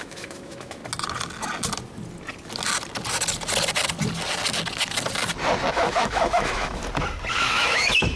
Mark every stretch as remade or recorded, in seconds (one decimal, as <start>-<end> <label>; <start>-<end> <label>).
0.0-0.8 remade; 0.8-5.7 recorded; 5.7-6.8 remade; 6.8-7.3 recorded; 7.3-8.2 remade